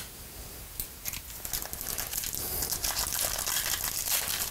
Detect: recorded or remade recorded